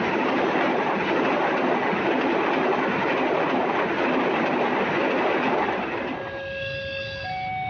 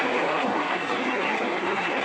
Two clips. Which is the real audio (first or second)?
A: first